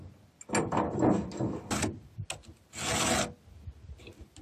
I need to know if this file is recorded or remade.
recorded